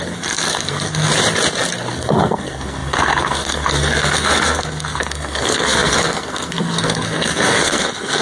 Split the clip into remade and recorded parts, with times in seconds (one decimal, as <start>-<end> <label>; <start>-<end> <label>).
0.0-1.1 remade; 1.1-1.9 recorded; 1.9-8.2 remade